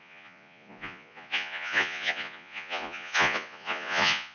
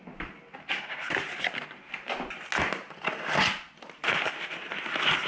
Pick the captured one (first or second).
second